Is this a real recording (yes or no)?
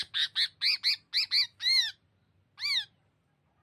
yes